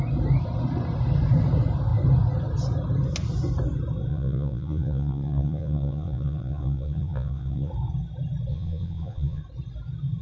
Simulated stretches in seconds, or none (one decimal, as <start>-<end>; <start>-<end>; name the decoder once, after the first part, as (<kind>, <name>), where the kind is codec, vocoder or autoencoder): 4.1-7.7 (vocoder, Vocos); 8.5-9.4